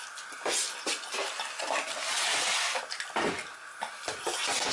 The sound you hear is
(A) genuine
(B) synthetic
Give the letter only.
A